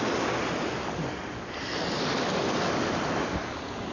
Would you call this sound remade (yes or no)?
no